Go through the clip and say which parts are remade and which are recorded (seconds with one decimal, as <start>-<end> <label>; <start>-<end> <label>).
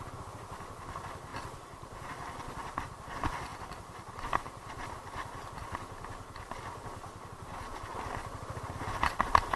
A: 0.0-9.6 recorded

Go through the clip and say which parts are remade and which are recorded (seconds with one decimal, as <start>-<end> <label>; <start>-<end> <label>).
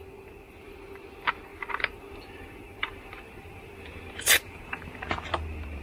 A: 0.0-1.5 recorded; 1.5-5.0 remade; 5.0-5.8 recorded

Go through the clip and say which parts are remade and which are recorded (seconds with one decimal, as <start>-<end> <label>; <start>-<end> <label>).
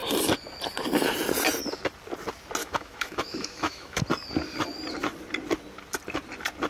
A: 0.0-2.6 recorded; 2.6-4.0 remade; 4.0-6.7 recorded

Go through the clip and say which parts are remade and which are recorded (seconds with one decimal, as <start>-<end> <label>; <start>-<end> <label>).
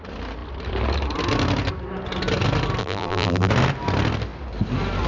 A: 0.0-2.8 recorded; 2.8-3.5 remade; 3.5-5.1 recorded